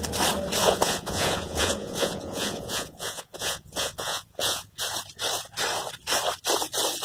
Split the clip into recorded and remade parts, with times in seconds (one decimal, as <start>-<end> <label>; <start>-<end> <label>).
0.0-0.6 recorded; 0.6-4.8 remade; 4.8-7.0 recorded